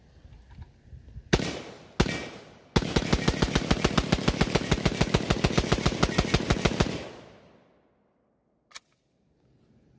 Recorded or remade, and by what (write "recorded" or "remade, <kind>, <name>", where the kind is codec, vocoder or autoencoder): recorded